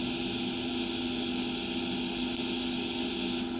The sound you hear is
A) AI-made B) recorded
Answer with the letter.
B